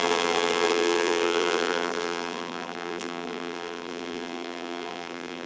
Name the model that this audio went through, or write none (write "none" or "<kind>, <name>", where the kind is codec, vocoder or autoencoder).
vocoder, BigVGAN v2